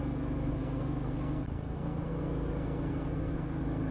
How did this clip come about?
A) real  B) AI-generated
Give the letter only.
B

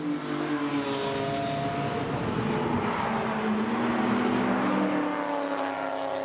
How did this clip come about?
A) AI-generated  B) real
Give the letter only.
B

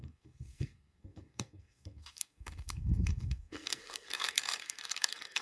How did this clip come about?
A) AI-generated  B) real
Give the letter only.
A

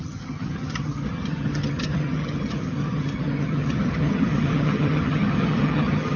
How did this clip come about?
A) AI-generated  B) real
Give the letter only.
A